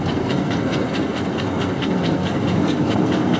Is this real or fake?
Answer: fake